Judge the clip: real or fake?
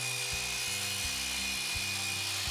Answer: real